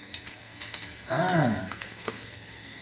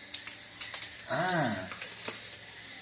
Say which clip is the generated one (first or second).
first